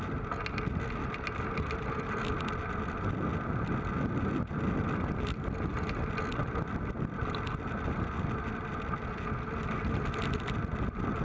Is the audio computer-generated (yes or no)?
no